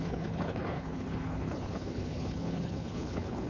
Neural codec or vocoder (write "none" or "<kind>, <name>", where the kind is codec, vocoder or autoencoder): codec, HILCodec